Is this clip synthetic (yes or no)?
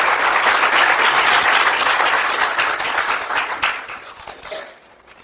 no